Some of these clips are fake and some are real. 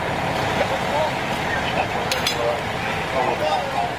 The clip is real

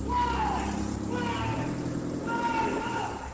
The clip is real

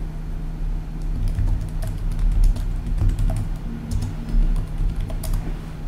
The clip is real